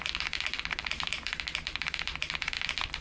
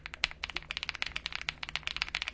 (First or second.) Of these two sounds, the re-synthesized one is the first